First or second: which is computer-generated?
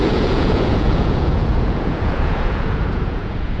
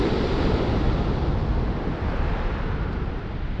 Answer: first